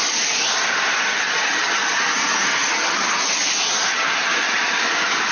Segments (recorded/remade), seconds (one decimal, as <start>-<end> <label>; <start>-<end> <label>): 0.0-1.1 recorded; 1.1-1.8 remade; 1.8-2.5 recorded; 2.5-3.1 remade; 3.1-3.9 recorded; 3.9-5.3 remade